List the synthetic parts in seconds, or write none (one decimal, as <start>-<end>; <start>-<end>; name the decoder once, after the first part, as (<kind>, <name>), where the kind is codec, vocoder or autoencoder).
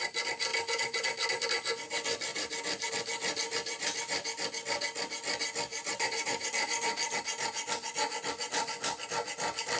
5.7-7.2 (vocoder, BigVGAN v2)